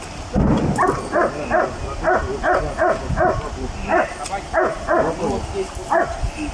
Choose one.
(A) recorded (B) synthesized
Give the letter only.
A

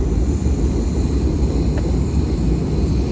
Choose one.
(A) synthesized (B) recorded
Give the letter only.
B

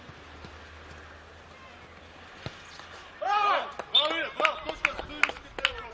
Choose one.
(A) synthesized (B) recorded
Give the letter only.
B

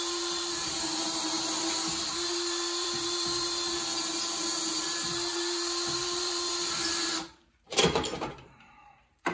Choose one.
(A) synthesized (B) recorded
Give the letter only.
A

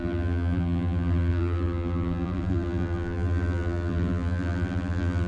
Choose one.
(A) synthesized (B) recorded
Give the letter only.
A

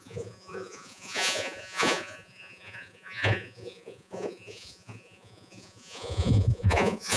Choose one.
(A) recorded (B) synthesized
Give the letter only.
B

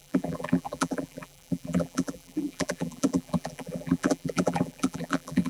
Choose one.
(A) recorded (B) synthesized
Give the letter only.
B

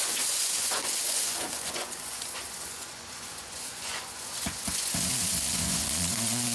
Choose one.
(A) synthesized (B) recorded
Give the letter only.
A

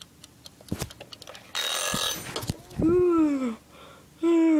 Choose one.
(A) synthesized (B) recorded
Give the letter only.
B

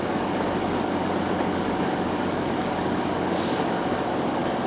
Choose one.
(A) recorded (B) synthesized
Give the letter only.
B